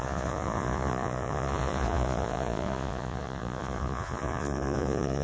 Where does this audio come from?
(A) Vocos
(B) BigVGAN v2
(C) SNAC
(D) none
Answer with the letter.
A